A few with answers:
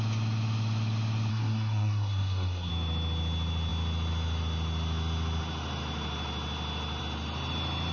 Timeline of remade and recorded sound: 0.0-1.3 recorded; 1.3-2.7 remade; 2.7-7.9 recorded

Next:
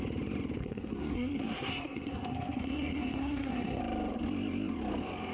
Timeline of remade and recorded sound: 0.0-0.6 recorded; 0.6-3.8 remade; 3.8-5.3 recorded

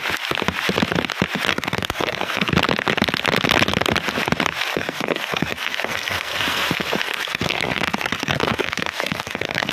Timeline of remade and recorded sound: 0.0-1.5 recorded; 1.5-2.5 remade; 2.5-4.7 recorded; 4.7-9.7 remade

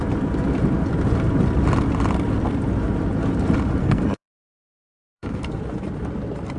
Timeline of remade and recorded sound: 0.0-3.8 recorded; 3.8-5.6 remade; 5.6-6.6 recorded

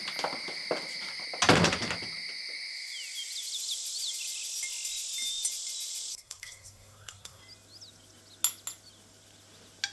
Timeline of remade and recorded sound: 0.0-6.1 recorded; 6.1-7.4 remade; 7.4-9.9 recorded

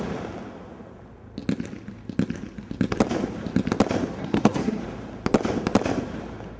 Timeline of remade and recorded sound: 0.0-4.2 recorded; 4.2-4.8 remade; 4.8-6.6 recorded

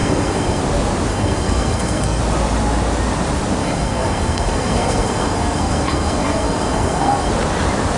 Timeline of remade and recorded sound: 0.0-0.6 remade; 0.6-1.1 recorded; 1.1-2.2 remade; 2.2-3.6 recorded; 3.6-7.3 remade; 7.3-8.0 recorded